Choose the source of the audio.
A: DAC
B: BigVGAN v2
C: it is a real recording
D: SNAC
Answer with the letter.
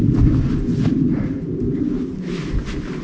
C